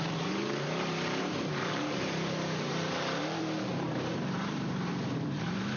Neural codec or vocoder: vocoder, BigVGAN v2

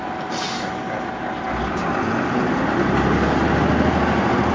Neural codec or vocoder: none